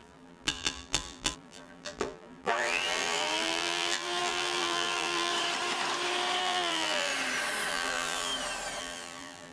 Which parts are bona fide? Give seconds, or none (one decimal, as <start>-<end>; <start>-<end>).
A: 5.3-6.4; 7.1-7.7; 8.3-8.8